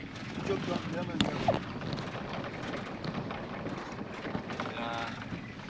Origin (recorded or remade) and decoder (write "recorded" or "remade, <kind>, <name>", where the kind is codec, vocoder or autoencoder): recorded